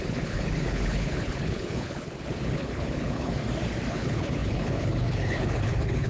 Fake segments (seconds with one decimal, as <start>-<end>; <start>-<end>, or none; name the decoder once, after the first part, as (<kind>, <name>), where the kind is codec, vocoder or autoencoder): 0.0-3.4 (codec, HILCodec); 3.9-6.1